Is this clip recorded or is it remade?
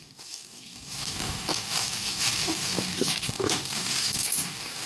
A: remade